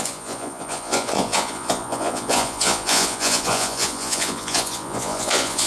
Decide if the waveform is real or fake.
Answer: fake